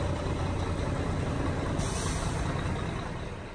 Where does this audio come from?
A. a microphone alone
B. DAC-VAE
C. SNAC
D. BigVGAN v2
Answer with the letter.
A